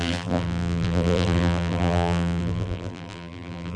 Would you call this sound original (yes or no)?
no